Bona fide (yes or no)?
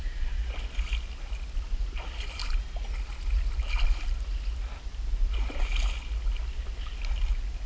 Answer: yes